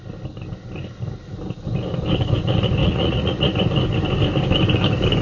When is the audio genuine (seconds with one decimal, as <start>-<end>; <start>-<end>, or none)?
0.0-2.8; 3.5-5.2